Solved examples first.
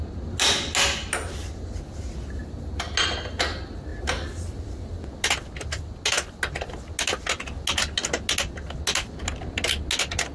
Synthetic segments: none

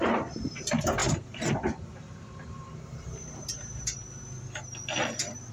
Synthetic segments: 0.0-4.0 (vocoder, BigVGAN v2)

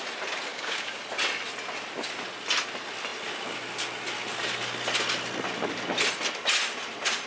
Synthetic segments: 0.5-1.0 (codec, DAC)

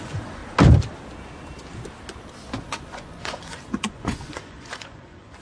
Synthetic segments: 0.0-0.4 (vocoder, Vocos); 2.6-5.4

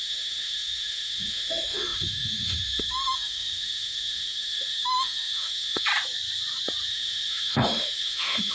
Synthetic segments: 0.0-5.9 (autoencoder, DAC-VAE); 6.9-8.5